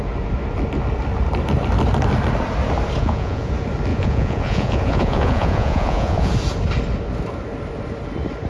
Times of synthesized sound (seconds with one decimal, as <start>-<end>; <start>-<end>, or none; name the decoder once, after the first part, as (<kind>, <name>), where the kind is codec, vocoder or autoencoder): 3.0-3.5 (vocoder, Vocos); 3.9-6.3